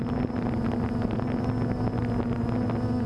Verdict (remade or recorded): recorded